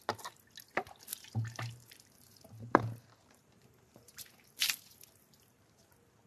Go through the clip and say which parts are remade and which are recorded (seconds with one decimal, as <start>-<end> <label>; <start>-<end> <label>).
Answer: 0.0-1.1 recorded; 1.1-4.5 remade; 4.5-6.3 recorded